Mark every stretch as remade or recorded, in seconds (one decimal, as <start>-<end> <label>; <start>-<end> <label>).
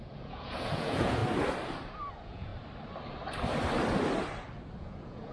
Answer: 0.0-1.2 remade; 1.2-2.1 recorded; 2.1-2.5 remade; 2.5-4.8 recorded; 4.8-5.3 remade